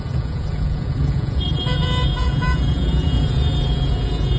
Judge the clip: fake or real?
fake